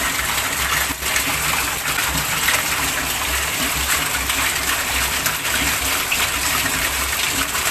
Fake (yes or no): no